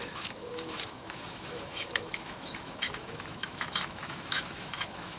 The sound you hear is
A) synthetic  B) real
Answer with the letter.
A